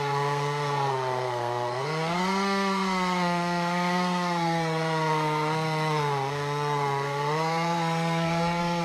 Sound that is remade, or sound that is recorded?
remade